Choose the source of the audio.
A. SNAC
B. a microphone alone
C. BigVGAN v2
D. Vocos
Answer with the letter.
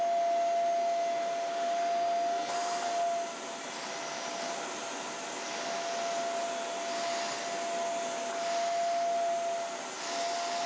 B